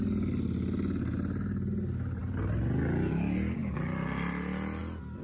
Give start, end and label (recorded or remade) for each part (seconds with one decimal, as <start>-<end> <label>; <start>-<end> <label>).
0.0-5.2 recorded

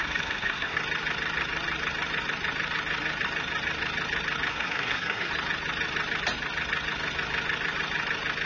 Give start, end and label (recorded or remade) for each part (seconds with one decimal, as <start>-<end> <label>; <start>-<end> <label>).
0.0-0.8 remade; 0.8-4.5 recorded; 4.5-5.3 remade; 5.3-8.5 recorded

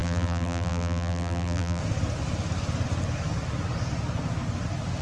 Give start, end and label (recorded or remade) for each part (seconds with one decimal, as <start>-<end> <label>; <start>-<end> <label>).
0.0-1.8 remade; 1.8-5.0 recorded

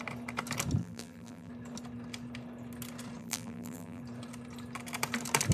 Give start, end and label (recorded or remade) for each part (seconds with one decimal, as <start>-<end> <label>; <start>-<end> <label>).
0.0-0.8 recorded; 0.8-1.5 remade; 1.5-3.2 recorded; 3.2-4.0 remade; 4.0-5.5 recorded